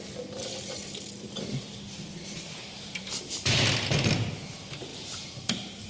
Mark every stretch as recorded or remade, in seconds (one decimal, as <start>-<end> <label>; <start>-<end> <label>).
0.0-2.1 recorded; 2.1-3.6 remade; 3.6-4.9 recorded; 4.9-5.9 remade